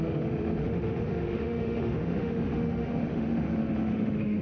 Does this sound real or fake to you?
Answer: fake